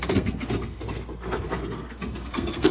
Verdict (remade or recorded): remade